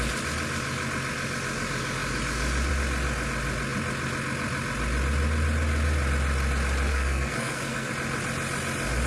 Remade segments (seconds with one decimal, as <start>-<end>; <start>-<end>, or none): 6.9-7.9